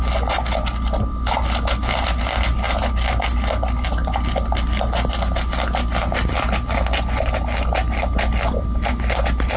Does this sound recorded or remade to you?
recorded